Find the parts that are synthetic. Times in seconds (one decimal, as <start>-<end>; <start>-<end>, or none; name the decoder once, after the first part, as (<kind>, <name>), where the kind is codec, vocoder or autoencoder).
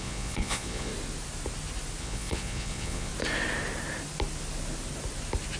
0.0-0.9 (vocoder, Vocos); 2.0-3.1